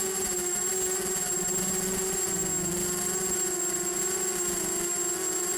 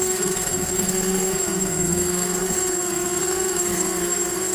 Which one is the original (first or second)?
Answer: first